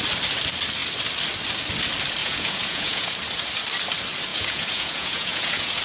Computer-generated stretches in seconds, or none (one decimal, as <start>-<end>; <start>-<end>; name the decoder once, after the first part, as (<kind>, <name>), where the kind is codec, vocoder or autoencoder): 2.2-3.1 (vocoder, Vocos); 4.3-5.8